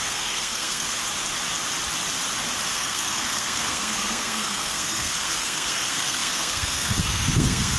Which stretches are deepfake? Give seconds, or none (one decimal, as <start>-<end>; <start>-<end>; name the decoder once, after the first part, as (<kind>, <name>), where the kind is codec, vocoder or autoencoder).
0.0-1.0 (codec, SNAC); 2.7-7.8